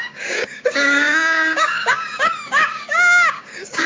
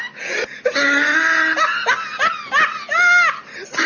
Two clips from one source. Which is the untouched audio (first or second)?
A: second